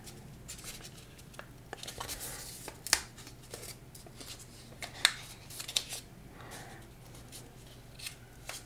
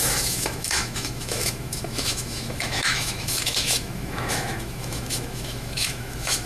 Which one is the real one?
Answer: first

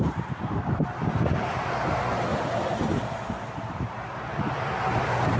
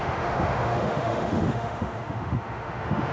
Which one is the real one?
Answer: first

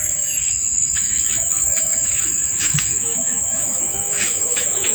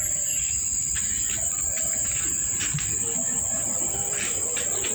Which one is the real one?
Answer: second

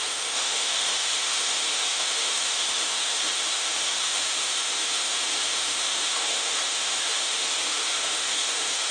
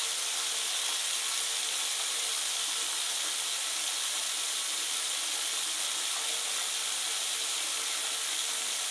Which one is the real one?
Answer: second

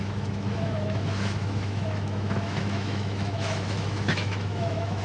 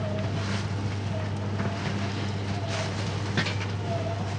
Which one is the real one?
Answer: second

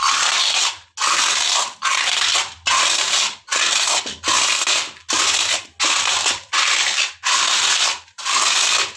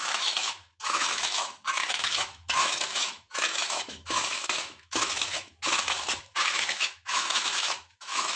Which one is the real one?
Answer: first